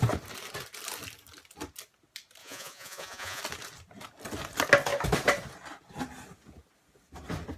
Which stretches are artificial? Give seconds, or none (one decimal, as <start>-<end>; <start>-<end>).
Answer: 2.4-3.4